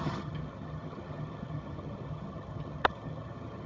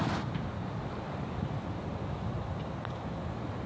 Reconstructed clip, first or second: first